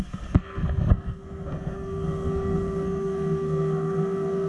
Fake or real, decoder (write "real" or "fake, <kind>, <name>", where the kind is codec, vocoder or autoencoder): fake, codec, SNAC